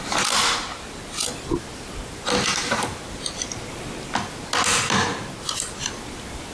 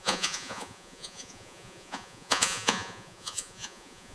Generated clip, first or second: second